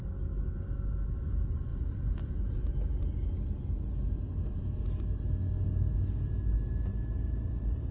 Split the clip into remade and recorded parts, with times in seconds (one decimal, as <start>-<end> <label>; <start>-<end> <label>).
0.0-7.9 recorded